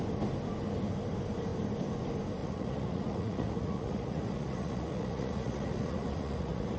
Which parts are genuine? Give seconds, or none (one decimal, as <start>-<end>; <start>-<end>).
0.0-2.4